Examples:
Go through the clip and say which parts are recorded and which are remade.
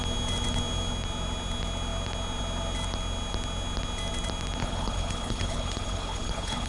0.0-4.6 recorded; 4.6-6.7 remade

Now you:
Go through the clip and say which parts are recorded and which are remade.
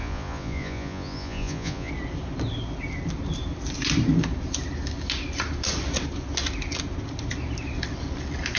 0.0-1.9 remade; 1.9-8.6 recorded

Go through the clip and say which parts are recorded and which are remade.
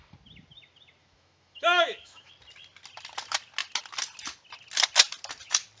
0.0-1.0 recorded; 1.0-2.3 remade; 2.3-5.8 recorded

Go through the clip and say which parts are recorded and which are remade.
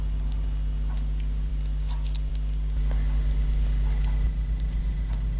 0.0-5.4 recorded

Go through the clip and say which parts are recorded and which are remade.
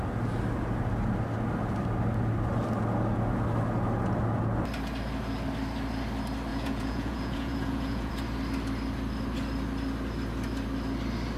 0.0-6.5 recorded; 6.5-8.1 remade; 8.1-11.4 recorded